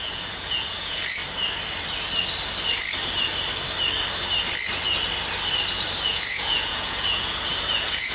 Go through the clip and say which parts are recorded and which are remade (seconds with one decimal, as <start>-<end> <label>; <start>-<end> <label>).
0.0-1.2 remade; 1.2-6.1 recorded; 6.1-8.1 remade